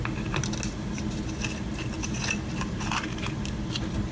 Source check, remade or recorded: recorded